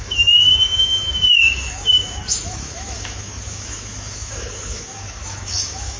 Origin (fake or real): fake